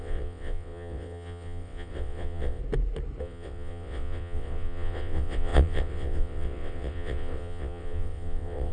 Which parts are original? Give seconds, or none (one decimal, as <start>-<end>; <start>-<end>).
2.6-3.2